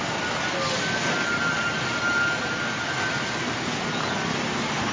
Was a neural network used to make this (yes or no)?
no